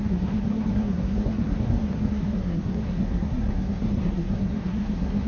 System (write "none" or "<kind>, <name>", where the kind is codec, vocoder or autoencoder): codec, SNAC